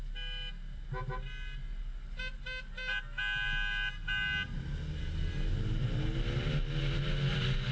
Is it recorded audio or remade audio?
recorded